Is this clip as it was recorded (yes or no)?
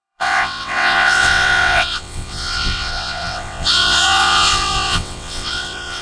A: no